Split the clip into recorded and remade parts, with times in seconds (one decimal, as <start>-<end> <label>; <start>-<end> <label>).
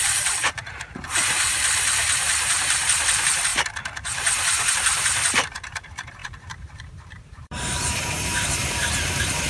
0.0-3.5 remade; 3.5-4.7 recorded; 4.7-9.5 remade